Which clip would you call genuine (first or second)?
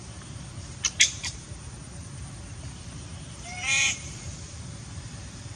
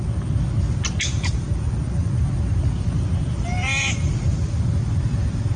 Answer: second